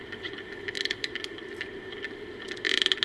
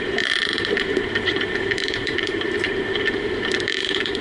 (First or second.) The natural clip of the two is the first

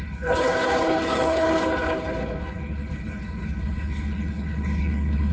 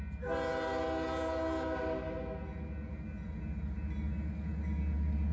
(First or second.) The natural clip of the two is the second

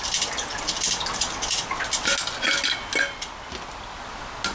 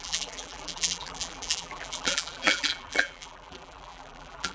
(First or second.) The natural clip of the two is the first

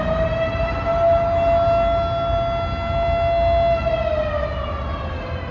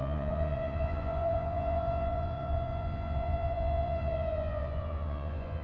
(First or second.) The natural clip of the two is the first